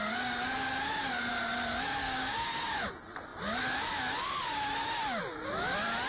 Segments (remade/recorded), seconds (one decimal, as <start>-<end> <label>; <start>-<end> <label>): 0.0-2.0 recorded; 2.0-2.9 remade; 2.9-6.1 recorded